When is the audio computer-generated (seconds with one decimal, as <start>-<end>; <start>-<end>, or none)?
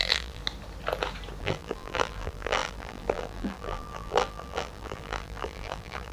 0.0-0.4; 1.4-6.1